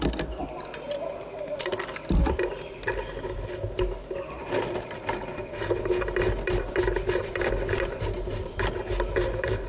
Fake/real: real